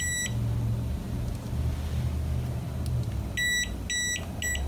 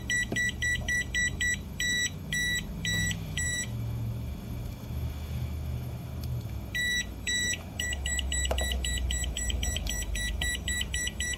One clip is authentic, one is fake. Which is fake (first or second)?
second